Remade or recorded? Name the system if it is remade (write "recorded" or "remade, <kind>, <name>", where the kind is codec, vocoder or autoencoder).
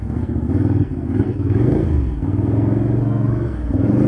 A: remade, codec, SNAC